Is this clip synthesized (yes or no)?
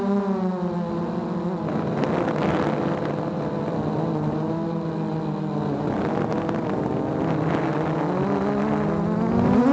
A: no